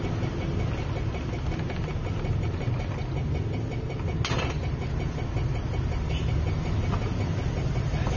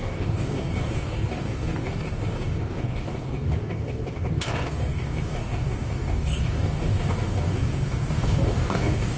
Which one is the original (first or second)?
first